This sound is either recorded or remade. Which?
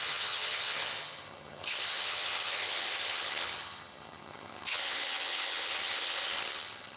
remade